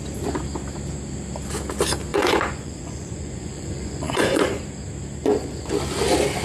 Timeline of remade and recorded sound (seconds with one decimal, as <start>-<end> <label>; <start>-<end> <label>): 0.0-2.1 recorded; 2.1-4.6 remade; 4.6-5.2 recorded; 5.2-5.7 remade; 5.7-6.4 recorded